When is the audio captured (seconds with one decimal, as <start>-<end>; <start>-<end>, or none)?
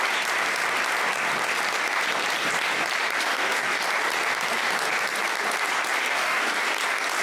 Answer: 0.0-3.2; 3.8-6.1; 6.6-7.2